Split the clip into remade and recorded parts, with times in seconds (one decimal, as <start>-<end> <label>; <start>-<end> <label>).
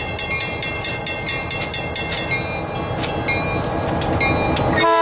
0.0-5.0 recorded